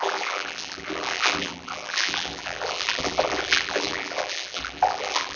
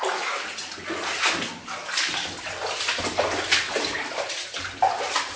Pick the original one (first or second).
second